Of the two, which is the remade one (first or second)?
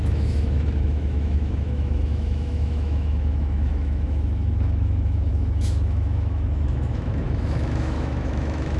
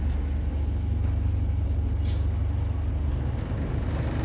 first